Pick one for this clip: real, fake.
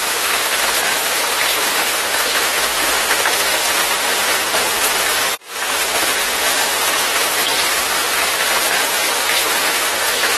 fake